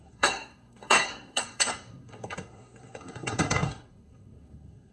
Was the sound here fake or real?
fake